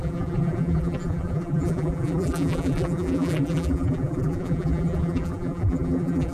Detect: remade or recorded remade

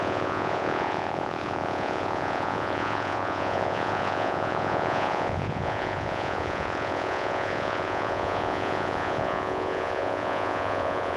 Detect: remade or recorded remade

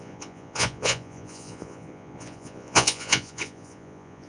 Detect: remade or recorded remade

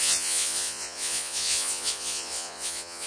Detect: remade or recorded remade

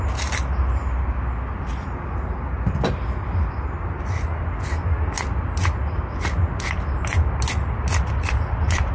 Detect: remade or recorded recorded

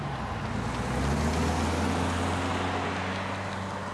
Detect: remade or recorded recorded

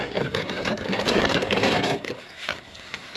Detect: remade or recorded remade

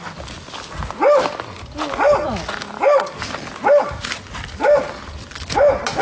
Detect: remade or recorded recorded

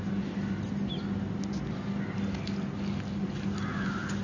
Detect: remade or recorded recorded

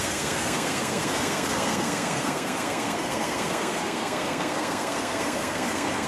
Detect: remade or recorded remade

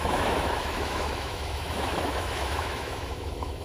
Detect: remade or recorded remade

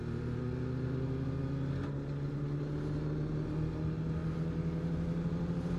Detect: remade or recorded recorded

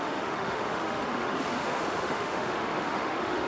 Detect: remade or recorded remade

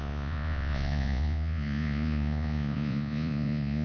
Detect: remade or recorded remade